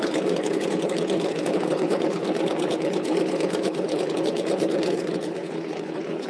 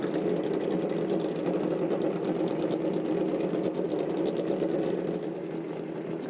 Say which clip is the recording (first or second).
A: second